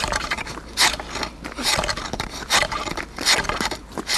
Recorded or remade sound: remade